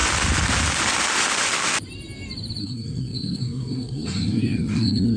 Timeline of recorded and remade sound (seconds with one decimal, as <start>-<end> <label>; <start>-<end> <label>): 0.0-2.6 recorded; 2.6-5.2 remade

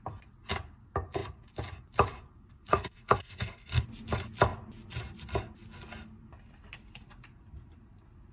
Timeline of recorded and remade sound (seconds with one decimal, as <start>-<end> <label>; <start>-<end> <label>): 0.0-2.7 recorded; 2.7-3.8 remade; 3.8-8.3 recorded

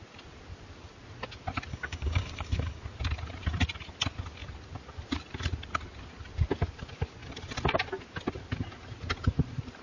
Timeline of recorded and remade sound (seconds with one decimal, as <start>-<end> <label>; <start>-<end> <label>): 0.0-1.7 recorded; 1.7-2.8 remade; 2.8-9.8 recorded

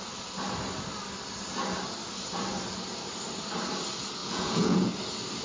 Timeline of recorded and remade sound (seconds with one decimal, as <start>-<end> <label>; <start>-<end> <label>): 0.0-4.2 recorded; 4.2-4.9 remade; 4.9-5.4 recorded

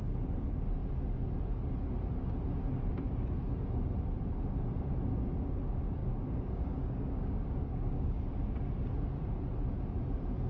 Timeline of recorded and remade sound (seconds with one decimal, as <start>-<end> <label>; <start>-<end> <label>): 0.0-6.0 recorded; 6.0-8.2 remade; 8.2-10.5 recorded

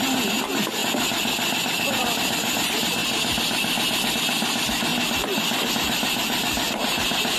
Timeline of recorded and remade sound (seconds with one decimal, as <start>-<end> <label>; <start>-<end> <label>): 0.0-0.8 remade; 0.8-1.8 recorded; 1.8-3.0 remade; 3.0-4.1 recorded; 4.1-4.9 remade; 4.9-5.7 recorded; 5.7-7.4 remade

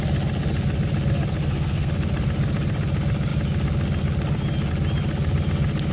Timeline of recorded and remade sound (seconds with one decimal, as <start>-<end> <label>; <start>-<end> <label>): 0.0-1.4 recorded; 1.4-1.9 remade; 1.9-5.9 recorded

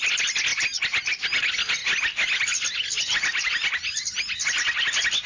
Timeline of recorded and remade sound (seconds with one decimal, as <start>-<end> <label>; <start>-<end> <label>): 0.0-5.3 recorded